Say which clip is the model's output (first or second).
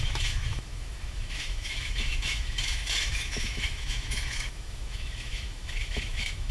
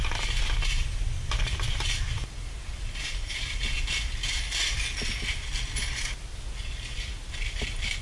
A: first